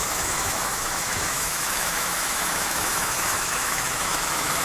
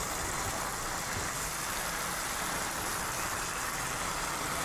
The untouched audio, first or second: second